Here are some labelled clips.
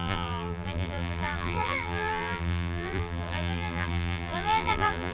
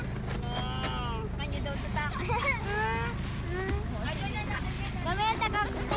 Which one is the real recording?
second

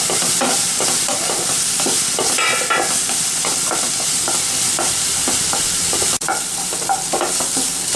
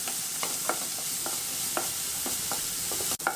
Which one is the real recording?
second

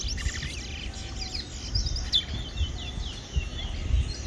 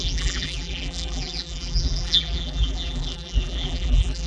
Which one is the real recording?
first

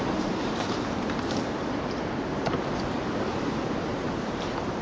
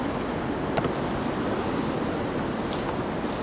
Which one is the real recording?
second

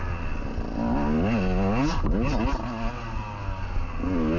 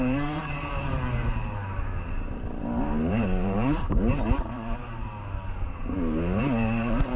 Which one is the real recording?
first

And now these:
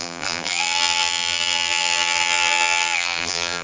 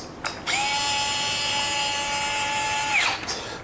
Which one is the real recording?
second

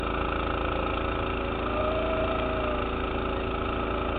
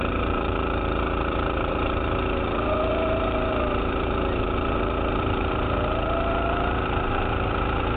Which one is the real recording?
first